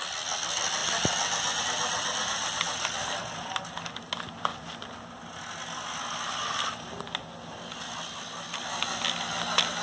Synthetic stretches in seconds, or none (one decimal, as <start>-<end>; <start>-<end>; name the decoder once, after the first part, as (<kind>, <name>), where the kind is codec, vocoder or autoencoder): none